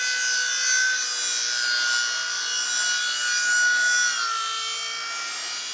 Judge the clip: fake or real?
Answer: real